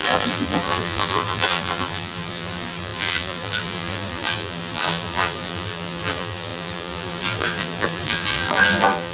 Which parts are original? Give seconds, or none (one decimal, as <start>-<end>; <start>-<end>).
none